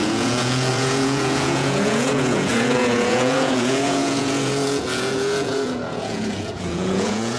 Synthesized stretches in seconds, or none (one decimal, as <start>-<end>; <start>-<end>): 0.0-7.4